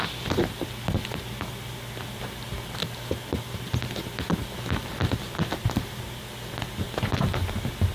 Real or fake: real